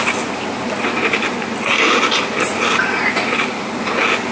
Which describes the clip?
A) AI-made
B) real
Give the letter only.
B